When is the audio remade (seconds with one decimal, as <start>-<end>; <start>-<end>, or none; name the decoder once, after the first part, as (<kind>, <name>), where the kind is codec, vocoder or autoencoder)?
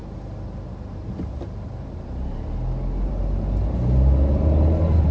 none